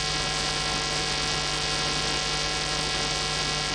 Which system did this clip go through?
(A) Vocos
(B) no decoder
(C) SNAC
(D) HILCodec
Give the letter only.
B